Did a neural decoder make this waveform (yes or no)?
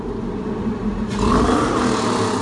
no